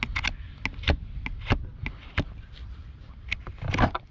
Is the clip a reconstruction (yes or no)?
no